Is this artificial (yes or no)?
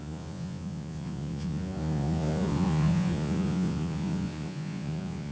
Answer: yes